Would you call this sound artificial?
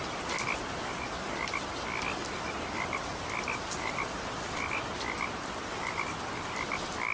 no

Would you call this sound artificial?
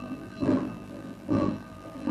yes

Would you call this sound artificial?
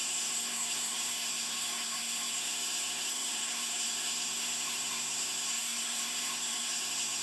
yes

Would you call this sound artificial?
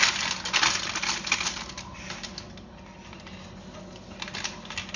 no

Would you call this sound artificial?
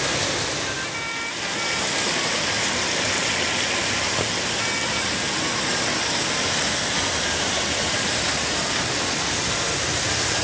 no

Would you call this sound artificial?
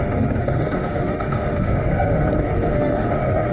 yes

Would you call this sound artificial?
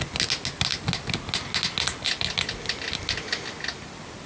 no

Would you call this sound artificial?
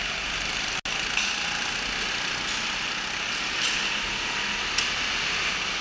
no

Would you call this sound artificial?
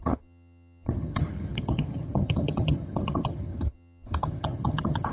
yes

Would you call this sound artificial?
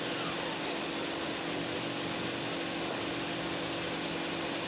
no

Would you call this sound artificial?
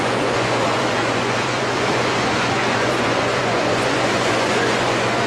yes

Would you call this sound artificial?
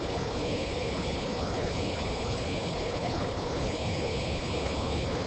yes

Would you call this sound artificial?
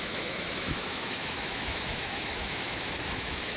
yes